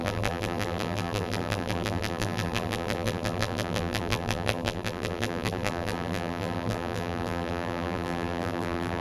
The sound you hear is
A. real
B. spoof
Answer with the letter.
B